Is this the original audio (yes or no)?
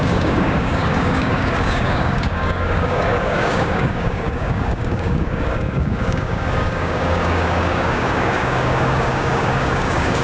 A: no